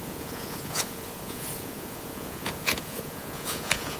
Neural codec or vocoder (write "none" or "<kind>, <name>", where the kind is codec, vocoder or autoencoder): vocoder, Vocos